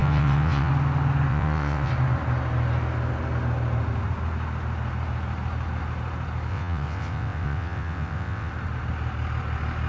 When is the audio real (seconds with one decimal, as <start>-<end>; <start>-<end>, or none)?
0.7-1.3; 1.9-6.5; 8.5-9.9